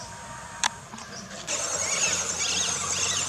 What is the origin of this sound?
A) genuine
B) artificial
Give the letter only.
A